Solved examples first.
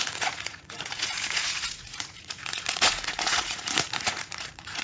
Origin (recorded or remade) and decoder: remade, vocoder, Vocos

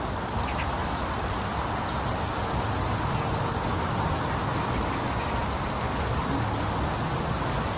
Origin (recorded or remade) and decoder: recorded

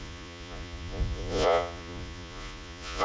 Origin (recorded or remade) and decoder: remade, vocoder, Vocos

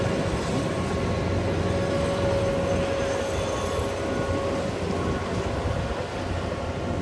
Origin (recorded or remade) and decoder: recorded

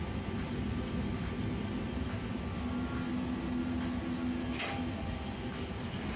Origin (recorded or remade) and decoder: recorded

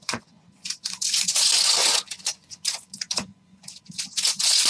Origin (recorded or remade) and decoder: remade, vocoder, Vocos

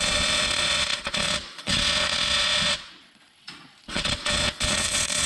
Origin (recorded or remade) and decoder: remade, vocoder, Vocos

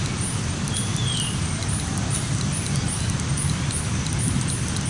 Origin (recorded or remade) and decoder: recorded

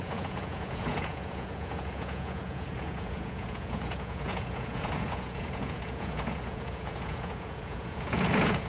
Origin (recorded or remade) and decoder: remade, vocoder, Vocos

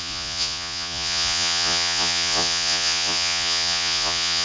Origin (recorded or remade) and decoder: remade, vocoder, Vocos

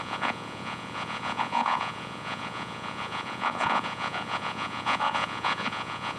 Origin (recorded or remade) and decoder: remade, vocoder, Vocos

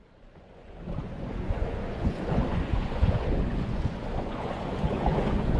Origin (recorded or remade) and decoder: remade, vocoder, Vocos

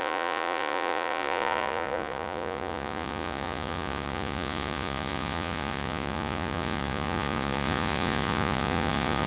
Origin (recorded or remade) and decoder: remade, vocoder, Vocos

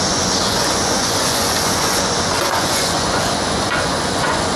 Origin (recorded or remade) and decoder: remade, vocoder, Vocos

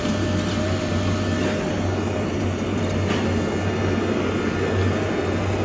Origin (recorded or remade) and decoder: recorded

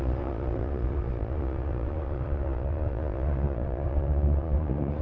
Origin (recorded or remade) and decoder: remade, vocoder, Vocos